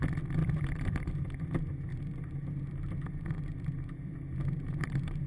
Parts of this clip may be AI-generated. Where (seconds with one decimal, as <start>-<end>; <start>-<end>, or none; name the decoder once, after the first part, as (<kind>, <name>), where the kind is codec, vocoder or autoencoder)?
0.4-1.1 (vocoder, BigVGAN v2); 1.9-5.3